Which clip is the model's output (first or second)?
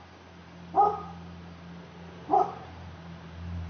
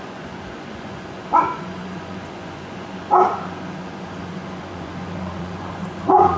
second